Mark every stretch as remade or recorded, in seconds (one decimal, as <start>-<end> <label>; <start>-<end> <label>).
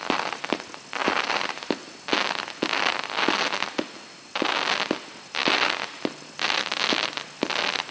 0.0-1.0 recorded; 1.0-2.2 remade; 2.2-5.4 recorded; 5.4-6.6 remade; 6.6-7.9 recorded